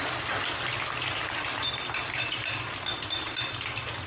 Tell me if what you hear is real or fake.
real